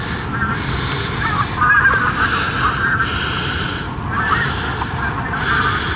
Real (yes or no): yes